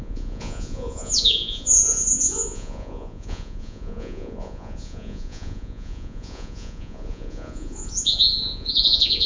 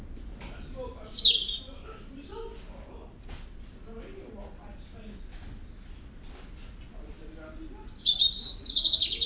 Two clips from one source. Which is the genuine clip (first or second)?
second